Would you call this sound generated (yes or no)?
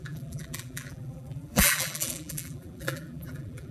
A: yes